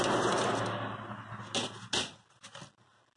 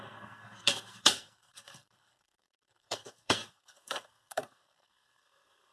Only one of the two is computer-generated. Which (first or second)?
second